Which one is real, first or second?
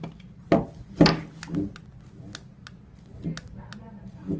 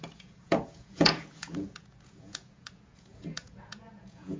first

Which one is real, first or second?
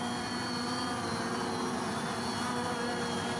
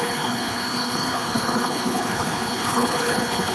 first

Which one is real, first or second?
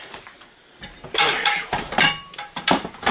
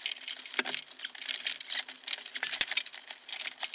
second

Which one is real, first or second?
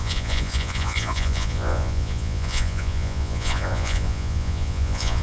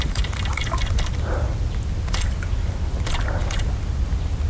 second